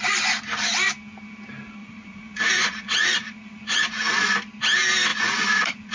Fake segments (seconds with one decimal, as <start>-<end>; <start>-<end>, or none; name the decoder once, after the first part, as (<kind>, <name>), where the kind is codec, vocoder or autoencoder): 1.8-4.2 (vocoder, Vocos); 5.1-5.9